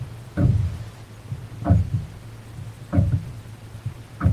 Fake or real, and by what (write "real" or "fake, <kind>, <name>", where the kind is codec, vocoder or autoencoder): real